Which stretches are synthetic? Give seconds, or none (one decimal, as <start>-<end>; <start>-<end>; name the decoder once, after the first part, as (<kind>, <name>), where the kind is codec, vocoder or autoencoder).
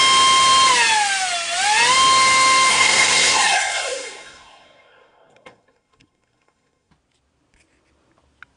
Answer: 2.7-6.9 (codec, SNAC)